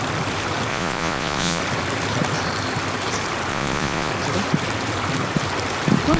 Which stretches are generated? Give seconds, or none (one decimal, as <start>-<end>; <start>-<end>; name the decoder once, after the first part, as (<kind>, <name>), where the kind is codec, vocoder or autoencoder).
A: 0.7-1.6 (vocoder, Vocos); 3.5-4.1